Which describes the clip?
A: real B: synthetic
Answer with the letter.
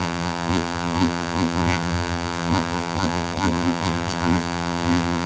B